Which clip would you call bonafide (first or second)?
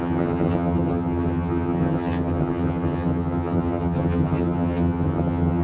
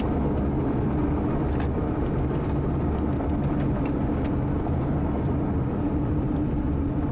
second